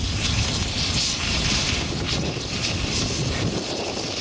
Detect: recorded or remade recorded